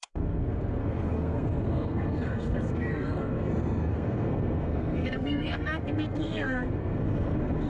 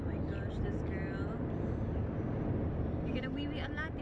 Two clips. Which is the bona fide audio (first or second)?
second